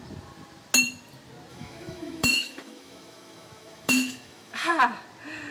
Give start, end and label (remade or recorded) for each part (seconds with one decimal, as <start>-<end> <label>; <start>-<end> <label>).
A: 0.0-1.5 recorded; 1.5-4.8 remade; 4.8-5.5 recorded